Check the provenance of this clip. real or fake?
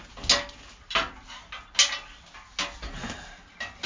real